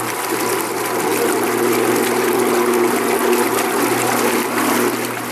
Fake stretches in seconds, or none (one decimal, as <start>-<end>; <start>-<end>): none